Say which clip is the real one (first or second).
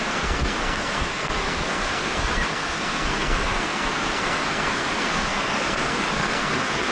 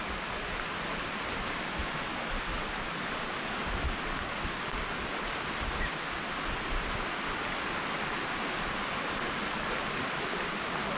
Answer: second